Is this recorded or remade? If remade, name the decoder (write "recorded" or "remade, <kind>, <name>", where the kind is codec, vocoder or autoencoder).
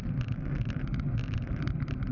recorded